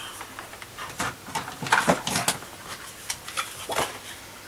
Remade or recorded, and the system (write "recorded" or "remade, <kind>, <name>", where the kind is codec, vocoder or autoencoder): recorded